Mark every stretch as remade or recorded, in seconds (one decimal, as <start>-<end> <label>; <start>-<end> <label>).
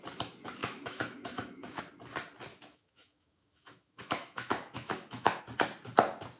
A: 0.0-0.6 recorded; 0.6-1.8 remade; 1.8-2.5 recorded; 2.5-5.4 remade; 5.4-6.4 recorded